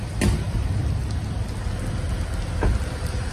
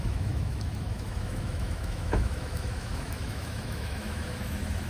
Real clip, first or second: first